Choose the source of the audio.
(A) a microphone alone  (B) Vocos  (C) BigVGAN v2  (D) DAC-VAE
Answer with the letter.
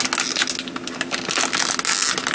A